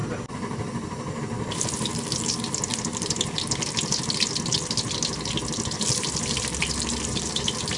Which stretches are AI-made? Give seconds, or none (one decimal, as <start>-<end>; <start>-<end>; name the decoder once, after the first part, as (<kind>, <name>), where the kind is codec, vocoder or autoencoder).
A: none